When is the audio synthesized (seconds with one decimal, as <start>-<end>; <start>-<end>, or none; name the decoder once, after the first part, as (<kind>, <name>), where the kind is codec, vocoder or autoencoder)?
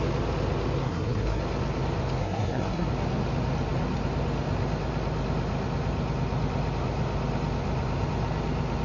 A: 0.8-1.4 (codec, SNAC); 2.2-2.9